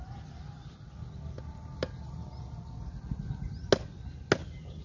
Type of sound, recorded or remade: recorded